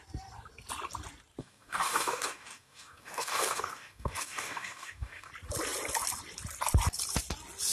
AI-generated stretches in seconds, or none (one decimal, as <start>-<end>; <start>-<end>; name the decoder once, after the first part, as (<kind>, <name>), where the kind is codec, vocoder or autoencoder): 1.4-5.3 (codec, DAC)